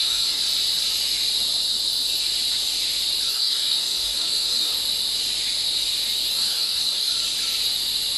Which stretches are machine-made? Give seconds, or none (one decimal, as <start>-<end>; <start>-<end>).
0.0-0.4; 3.3-4.7; 6.3-7.1